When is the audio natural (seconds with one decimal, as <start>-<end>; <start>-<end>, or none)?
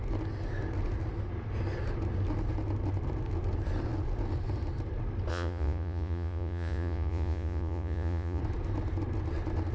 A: 0.0-5.3; 8.4-9.7